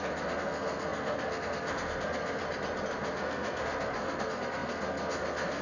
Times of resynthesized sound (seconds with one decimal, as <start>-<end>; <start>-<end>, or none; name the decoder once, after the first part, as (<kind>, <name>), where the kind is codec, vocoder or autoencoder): 0.0-2.4 (codec, SNAC); 3.0-5.6